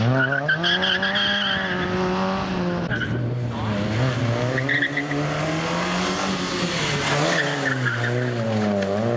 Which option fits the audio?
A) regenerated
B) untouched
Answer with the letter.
B